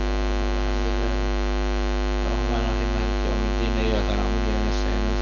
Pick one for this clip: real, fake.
real